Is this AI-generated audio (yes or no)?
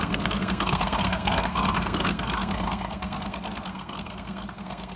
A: yes